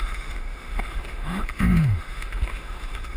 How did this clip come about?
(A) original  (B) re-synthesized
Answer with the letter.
B